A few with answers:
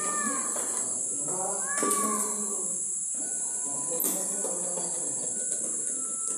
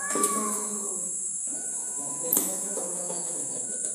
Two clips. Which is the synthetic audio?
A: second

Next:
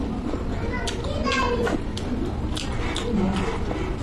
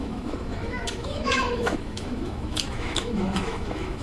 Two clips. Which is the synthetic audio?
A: second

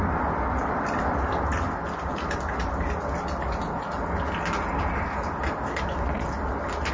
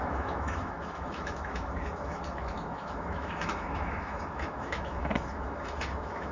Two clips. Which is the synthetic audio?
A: second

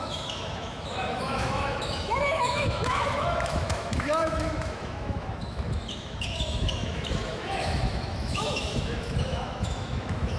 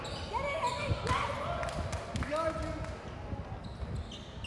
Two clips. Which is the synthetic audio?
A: first